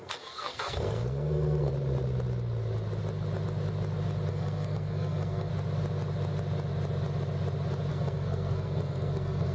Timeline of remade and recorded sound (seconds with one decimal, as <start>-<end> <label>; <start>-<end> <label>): 0.0-1.7 remade; 1.7-4.3 recorded; 4.3-5.5 remade; 5.5-7.9 recorded; 7.9-9.5 remade

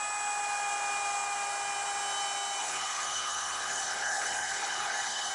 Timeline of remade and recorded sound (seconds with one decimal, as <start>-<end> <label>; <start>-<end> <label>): 0.0-2.6 recorded; 2.6-5.3 remade

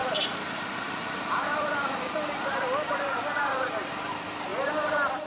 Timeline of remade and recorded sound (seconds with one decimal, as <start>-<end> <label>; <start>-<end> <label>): 0.0-5.3 remade